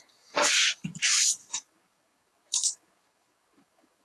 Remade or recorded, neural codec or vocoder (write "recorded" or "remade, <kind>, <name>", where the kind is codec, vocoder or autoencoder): remade, codec, DAC